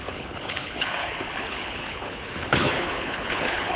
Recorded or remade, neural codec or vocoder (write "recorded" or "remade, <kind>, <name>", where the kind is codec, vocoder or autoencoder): remade, codec, HILCodec